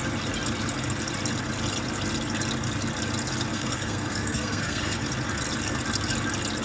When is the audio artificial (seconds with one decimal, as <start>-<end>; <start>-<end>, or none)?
3.5-5.0